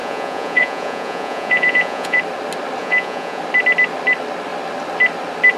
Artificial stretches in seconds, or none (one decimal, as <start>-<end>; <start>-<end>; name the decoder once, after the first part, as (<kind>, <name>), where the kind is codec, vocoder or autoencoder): 0.0-2.2 (vocoder, Vocos); 2.8-3.4